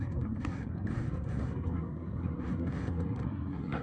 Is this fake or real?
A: fake